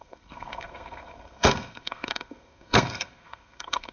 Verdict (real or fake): fake